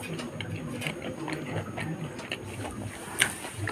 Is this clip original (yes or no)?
yes